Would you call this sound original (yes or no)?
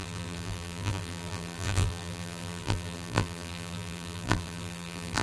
no